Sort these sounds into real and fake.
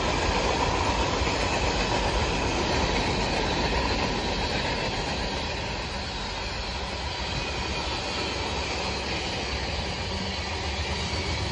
real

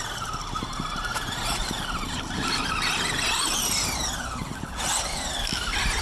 real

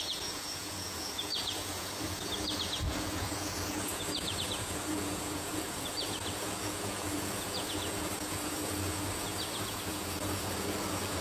fake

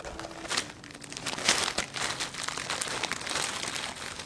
real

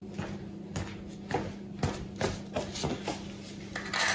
real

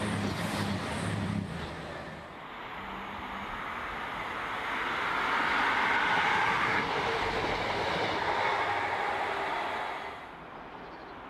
real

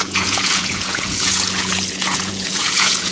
fake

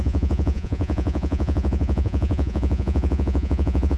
fake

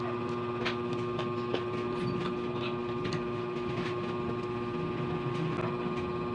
real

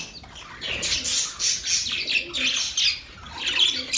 real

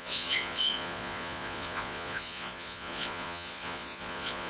fake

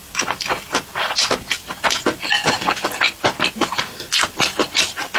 real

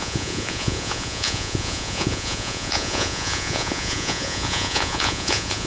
fake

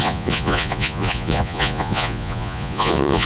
fake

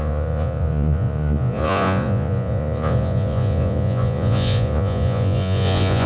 fake